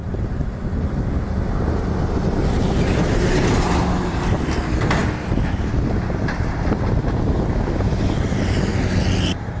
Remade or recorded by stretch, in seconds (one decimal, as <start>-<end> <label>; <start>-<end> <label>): 0.0-9.6 recorded